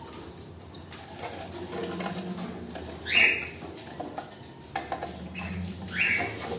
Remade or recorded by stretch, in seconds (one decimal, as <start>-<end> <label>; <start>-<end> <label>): 0.0-6.6 recorded